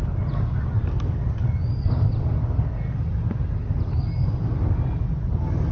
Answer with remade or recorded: recorded